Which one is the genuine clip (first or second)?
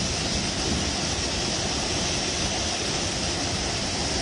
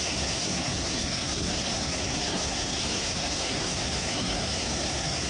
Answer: first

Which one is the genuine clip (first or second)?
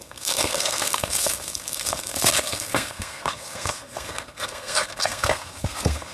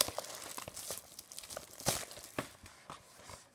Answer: second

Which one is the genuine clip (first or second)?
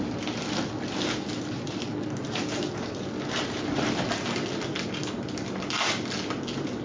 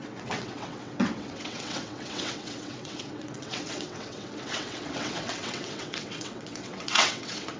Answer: first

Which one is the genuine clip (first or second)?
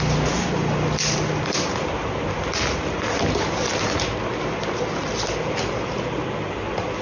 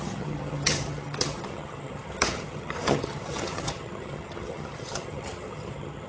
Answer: first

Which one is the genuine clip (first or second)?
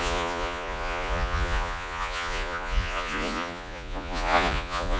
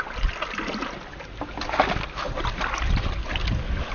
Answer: second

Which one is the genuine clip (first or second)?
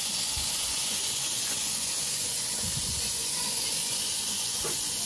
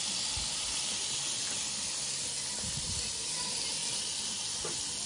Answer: second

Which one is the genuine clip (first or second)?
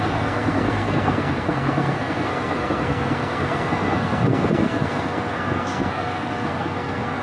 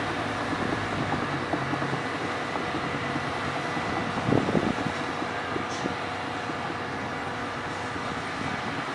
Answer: second